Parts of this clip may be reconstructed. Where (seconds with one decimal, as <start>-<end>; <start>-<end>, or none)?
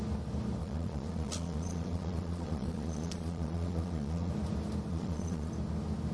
0.6-4.3; 4.9-5.5